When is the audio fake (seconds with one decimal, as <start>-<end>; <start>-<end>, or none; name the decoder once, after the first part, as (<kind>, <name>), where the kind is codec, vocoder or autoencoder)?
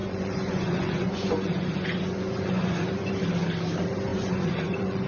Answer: 0.0-3.1 (vocoder, Vocos); 4.1-5.1